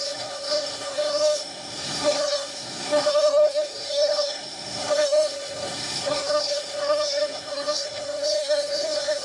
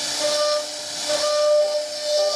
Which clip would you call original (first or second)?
second